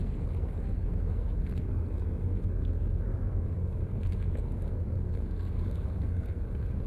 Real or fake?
fake